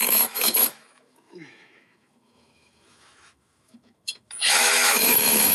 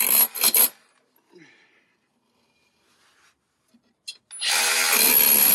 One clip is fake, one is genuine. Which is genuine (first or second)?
second